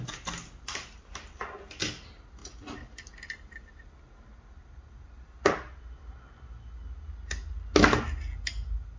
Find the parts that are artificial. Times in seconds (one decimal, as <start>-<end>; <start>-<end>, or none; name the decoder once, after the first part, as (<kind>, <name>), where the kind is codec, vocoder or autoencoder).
none